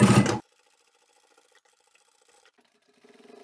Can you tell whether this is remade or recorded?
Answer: recorded